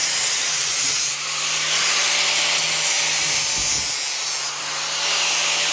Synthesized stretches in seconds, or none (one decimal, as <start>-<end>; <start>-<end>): 0.0-1.0